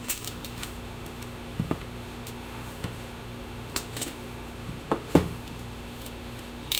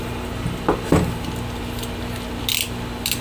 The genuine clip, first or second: second